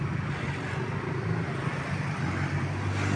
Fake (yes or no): no